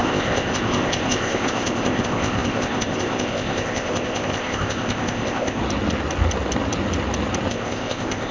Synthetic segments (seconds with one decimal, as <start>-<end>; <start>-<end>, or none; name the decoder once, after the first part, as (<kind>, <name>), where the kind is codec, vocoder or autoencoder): 0.0-5.6 (codec, ZipCodec); 7.5-8.3